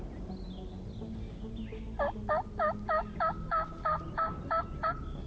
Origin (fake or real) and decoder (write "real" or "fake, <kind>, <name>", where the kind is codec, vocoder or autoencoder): real